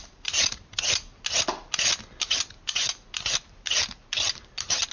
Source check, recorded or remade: recorded